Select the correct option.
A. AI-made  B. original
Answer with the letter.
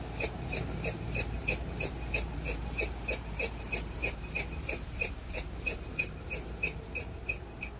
A